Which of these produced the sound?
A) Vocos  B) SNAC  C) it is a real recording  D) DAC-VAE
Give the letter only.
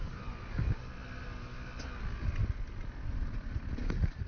C